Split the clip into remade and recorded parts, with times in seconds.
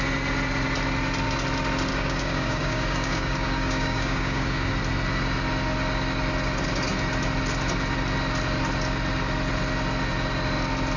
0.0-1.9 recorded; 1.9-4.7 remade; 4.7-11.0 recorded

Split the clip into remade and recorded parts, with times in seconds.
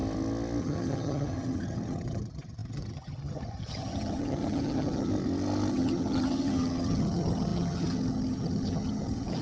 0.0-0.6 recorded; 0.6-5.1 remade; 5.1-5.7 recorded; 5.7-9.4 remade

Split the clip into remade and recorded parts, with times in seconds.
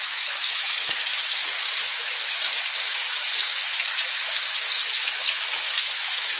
0.0-6.4 remade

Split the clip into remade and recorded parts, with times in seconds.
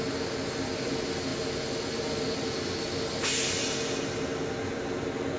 0.0-5.4 recorded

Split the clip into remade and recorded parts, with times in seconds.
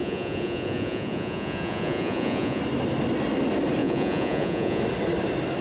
0.0-2.6 remade; 2.6-3.8 recorded; 3.8-4.8 remade; 4.8-5.6 recorded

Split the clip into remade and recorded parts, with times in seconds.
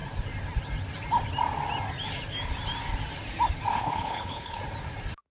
0.0-3.7 recorded; 3.7-4.6 remade; 4.6-5.3 recorded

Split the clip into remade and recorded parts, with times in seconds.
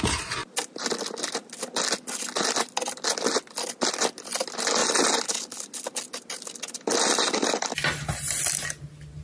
0.0-9.2 recorded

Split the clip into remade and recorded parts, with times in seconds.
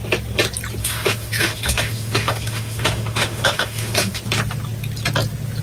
0.0-0.8 recorded; 0.8-4.2 remade; 4.2-5.6 recorded